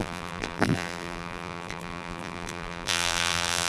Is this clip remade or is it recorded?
remade